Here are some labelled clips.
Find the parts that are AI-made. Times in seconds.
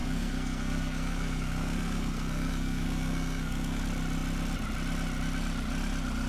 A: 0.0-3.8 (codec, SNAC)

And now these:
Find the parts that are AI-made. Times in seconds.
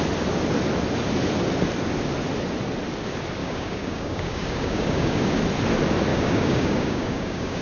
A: 3.4-5.4 (codec, DAC); 6.1-7.6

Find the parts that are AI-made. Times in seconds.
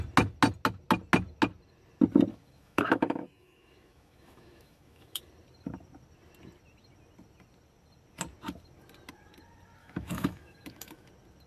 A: 2.3-5.2 (autoencoder, DAC-VAE); 9.8-11.1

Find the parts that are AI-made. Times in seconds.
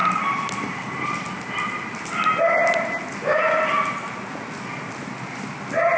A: 0.0-1.2 (vocoder, BigVGAN v2)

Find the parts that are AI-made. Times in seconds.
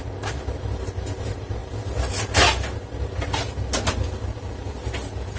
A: none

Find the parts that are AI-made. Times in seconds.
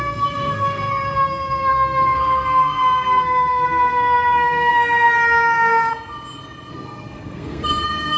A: 0.0-5.9 (codec, SNAC); 6.7-8.2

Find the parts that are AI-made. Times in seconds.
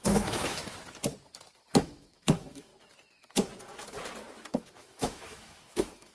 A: 0.0-0.6 (autoencoder, DAC-VAE); 1.7-2.7; 4.5-6.1